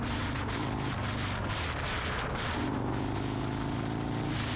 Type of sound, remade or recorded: recorded